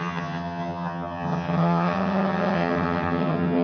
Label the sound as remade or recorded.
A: remade